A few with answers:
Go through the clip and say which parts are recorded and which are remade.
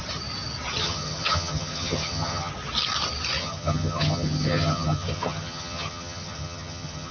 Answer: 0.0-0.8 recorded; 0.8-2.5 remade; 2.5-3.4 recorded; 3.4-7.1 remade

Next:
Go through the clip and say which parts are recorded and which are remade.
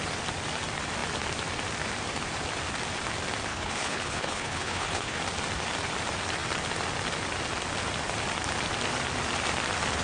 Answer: 0.0-3.5 recorded; 3.5-5.2 remade; 5.2-10.0 recorded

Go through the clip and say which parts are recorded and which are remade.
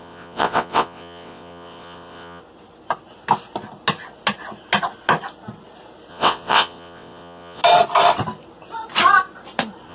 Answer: 0.0-2.4 remade; 2.4-6.1 recorded; 6.1-7.6 remade; 7.6-9.9 recorded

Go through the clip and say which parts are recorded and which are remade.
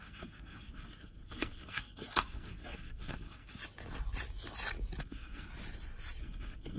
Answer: 0.0-3.6 remade; 3.6-5.0 recorded; 5.0-5.5 remade; 5.5-6.2 recorded; 6.2-6.8 remade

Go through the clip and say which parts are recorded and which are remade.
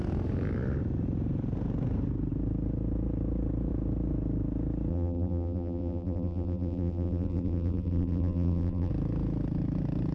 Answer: 0.0-4.9 recorded; 4.9-8.9 remade; 8.9-10.1 recorded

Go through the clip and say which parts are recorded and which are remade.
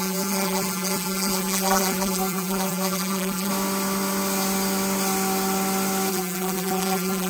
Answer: 0.0-3.5 remade; 3.5-6.1 recorded; 6.1-7.3 remade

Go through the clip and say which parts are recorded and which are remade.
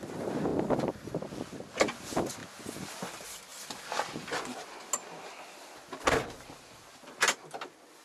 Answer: 0.0-8.0 recorded